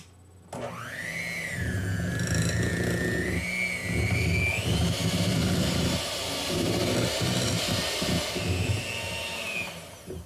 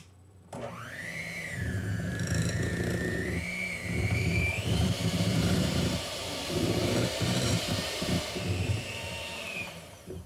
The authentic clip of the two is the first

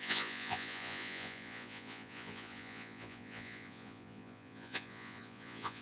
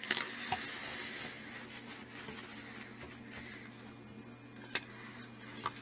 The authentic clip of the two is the second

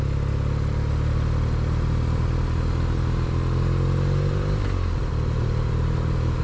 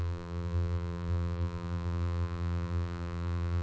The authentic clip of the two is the first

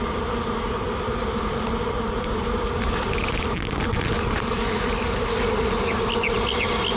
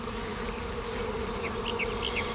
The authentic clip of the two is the second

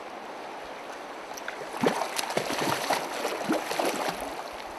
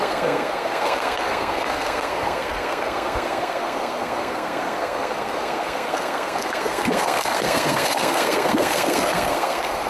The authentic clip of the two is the first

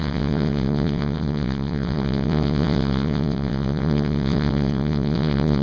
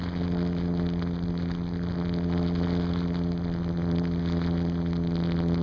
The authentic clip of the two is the second